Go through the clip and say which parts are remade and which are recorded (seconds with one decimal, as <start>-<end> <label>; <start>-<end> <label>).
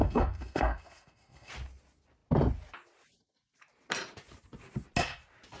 0.0-1.5 remade; 1.5-5.6 recorded